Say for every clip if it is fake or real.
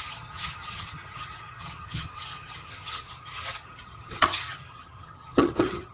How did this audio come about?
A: fake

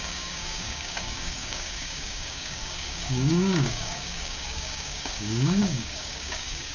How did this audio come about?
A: fake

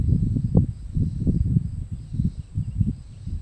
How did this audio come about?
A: fake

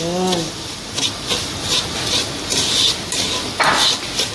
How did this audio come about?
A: real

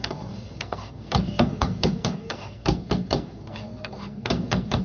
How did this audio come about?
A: fake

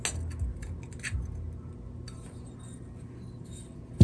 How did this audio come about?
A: real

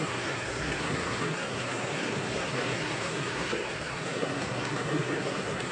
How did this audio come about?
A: fake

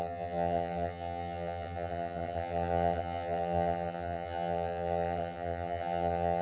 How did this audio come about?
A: fake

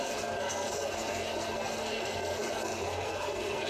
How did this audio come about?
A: fake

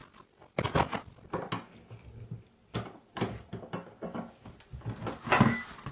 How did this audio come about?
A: real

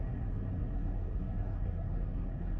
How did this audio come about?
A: fake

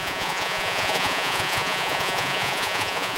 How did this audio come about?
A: fake